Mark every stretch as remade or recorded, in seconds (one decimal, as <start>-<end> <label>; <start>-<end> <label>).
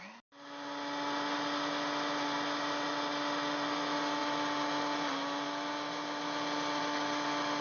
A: 0.0-7.6 recorded